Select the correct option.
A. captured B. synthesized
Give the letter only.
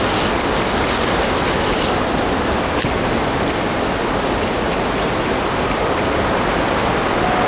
A